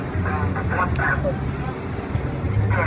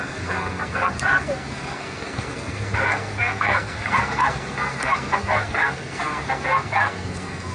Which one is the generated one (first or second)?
second